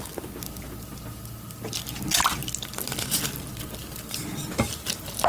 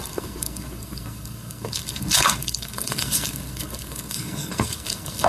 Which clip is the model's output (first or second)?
second